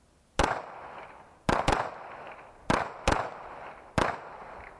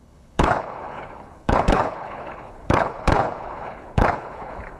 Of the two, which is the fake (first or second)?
second